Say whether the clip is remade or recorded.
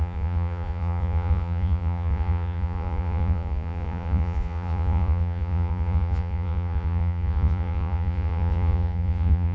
remade